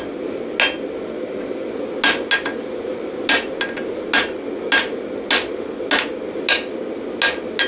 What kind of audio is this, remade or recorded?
recorded